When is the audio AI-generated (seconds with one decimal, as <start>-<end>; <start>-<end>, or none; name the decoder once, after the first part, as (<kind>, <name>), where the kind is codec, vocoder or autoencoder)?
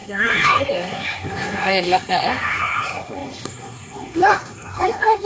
0.0-5.3 (codec, SNAC)